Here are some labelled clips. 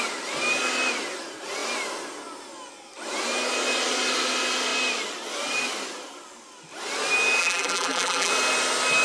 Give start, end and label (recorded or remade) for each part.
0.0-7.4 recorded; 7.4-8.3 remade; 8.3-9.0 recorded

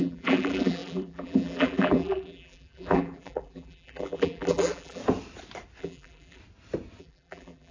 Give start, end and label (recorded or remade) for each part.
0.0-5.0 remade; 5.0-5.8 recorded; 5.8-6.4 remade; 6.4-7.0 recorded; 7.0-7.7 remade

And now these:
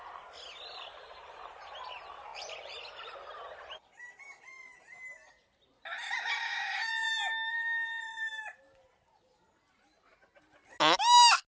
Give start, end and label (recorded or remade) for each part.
0.0-2.3 recorded; 2.3-4.2 remade; 4.2-8.1 recorded; 8.1-8.6 remade; 8.6-11.5 recorded